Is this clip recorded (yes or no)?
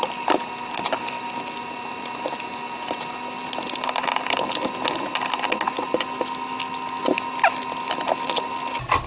yes